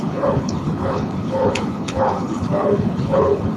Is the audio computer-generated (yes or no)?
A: yes